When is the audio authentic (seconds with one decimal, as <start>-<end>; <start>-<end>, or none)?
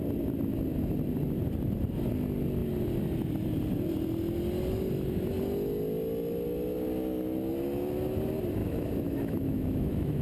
0.0-8.6